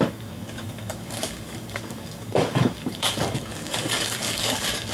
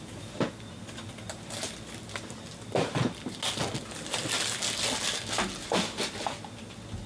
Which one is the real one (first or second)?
second